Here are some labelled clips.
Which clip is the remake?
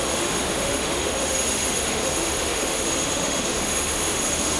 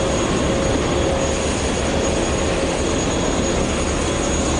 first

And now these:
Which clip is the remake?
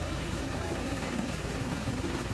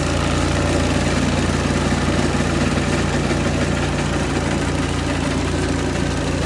first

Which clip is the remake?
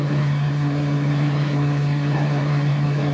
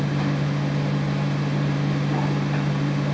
first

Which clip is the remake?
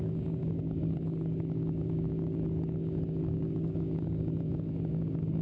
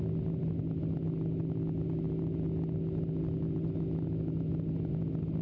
first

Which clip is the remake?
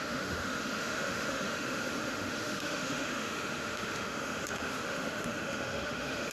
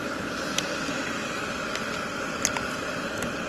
first